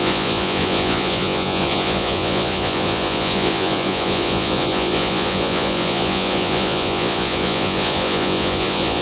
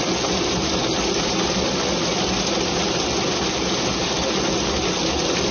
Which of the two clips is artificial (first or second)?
first